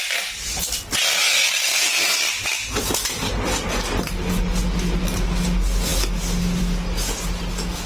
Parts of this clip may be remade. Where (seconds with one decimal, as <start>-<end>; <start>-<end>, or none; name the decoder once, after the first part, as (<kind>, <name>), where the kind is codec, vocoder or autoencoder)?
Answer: none